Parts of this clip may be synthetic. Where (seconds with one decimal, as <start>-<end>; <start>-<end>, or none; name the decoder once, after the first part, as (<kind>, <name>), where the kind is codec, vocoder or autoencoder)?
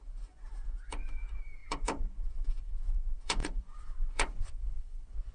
0.0-5.3 (vocoder, Vocos)